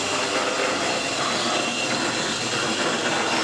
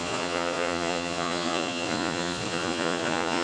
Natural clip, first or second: first